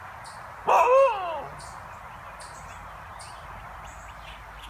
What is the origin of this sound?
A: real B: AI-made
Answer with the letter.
A